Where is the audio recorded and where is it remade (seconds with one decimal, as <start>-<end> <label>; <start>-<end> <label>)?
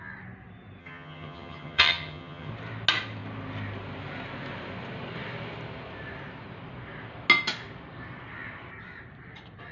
0.0-0.8 recorded; 0.8-2.5 remade; 2.5-9.7 recorded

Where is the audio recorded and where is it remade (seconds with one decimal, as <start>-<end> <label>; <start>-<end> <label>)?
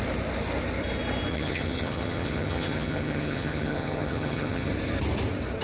0.0-1.3 recorded; 1.3-4.7 remade; 4.7-5.6 recorded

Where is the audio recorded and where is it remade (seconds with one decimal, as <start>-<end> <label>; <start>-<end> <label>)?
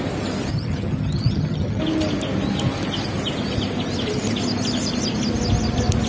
0.0-0.5 recorded; 0.5-1.8 remade; 1.8-6.1 recorded